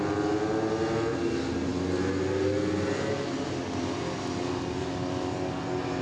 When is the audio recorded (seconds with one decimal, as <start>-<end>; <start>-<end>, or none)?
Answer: 0.0-6.0